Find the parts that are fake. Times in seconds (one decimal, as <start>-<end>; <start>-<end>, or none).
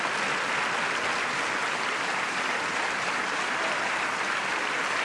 1.6-4.5